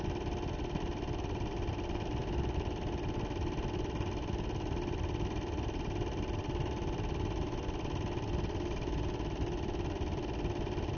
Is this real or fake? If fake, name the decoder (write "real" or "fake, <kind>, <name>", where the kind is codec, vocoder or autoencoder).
real